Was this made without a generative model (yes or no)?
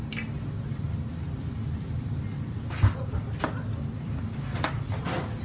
yes